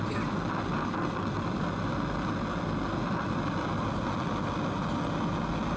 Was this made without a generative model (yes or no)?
yes